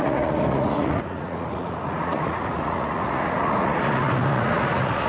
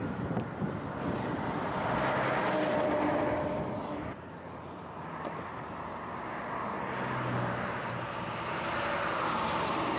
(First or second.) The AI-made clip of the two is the first